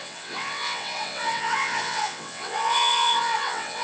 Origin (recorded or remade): remade